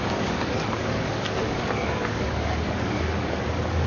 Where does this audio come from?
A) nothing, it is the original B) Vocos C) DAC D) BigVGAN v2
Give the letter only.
C